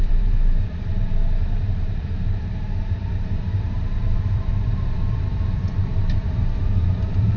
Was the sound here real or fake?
fake